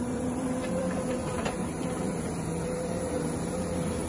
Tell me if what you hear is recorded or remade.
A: remade